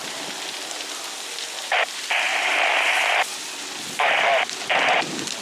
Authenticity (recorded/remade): recorded